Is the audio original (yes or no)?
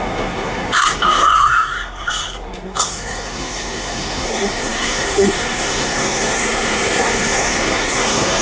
no